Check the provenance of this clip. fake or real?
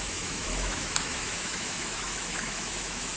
fake